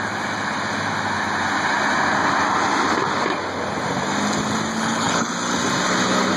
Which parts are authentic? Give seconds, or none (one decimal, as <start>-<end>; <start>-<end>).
0.0-4.7; 5.3-6.4

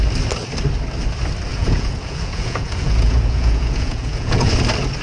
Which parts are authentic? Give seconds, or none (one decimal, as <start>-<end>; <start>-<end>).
0.0-1.5; 4.5-5.0

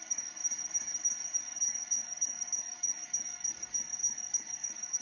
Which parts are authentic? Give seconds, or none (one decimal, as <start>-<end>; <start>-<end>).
0.4-1.4

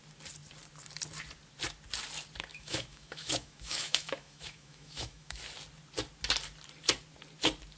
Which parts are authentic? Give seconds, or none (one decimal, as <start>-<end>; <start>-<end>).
0.0-2.5; 5.4-7.8

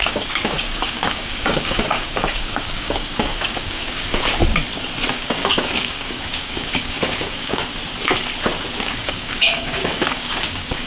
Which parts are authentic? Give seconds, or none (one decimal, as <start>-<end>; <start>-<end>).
4.5-5.1; 7.7-8.8

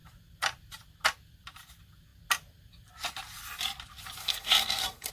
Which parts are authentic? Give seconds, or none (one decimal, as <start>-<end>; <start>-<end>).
0.0-4.2

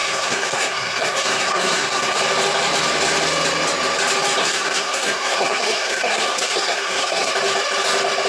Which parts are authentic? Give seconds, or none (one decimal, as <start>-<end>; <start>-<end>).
2.2-4.4; 7.3-8.3

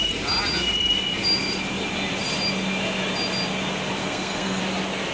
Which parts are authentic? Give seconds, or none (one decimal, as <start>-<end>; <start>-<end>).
0.0-4.0; 4.6-5.1